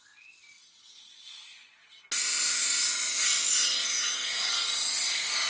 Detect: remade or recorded recorded